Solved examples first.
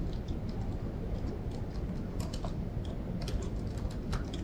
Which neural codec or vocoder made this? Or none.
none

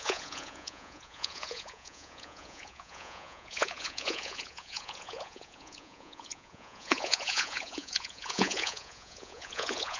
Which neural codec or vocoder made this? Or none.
vocoder, Vocos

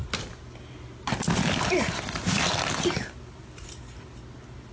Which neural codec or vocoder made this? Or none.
none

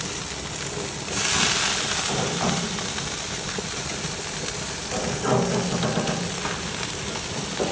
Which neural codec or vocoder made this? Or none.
none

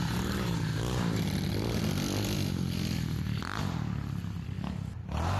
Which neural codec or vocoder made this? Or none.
none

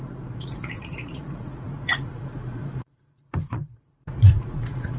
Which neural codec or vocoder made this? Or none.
vocoder, Vocos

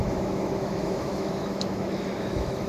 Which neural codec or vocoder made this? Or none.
autoencoder, DAC-VAE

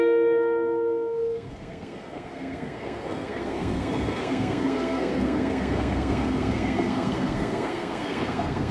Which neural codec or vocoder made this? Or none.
codec, SNAC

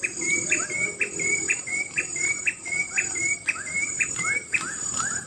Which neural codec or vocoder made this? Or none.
none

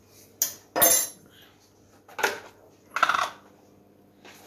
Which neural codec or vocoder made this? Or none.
none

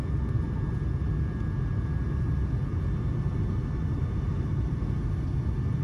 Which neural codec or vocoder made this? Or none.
none